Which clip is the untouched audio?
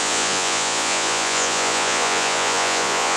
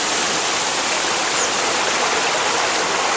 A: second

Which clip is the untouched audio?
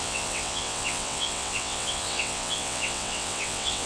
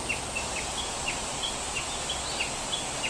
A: second